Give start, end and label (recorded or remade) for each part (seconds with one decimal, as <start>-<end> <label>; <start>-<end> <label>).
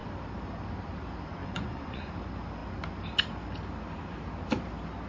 0.0-1.4 recorded; 1.4-2.1 remade; 2.1-5.1 recorded